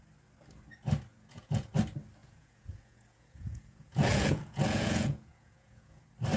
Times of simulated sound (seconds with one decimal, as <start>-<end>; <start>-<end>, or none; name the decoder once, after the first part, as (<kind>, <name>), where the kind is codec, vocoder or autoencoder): 1.1-1.7 (vocoder, Vocos); 2.2-6.0